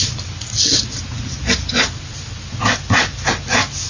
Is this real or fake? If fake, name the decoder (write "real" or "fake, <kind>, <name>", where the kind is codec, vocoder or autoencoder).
real